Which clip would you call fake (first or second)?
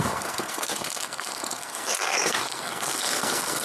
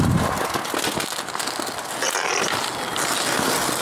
first